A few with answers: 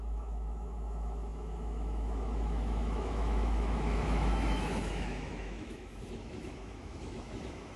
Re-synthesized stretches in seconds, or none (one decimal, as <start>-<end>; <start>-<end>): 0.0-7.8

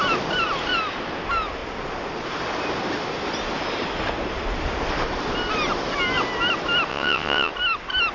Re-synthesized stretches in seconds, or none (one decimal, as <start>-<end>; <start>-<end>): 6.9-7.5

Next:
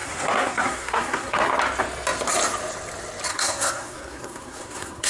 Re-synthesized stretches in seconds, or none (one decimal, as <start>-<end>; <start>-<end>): 0.0-1.5; 3.3-5.1

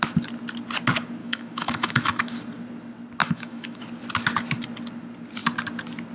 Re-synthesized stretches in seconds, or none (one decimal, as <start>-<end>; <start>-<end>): 1.2-2.3; 3.2-3.8

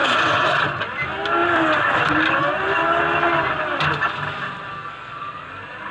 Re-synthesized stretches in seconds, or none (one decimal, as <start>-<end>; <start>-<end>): 4.7-5.5

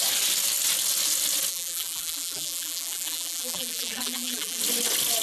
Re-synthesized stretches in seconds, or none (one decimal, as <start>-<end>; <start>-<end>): 1.5-4.6

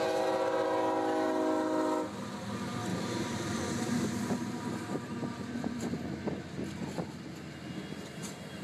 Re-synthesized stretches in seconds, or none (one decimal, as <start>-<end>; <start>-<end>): 2.9-5.8

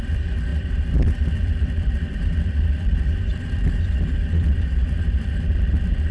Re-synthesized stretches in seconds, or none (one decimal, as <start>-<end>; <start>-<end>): 0.0-6.1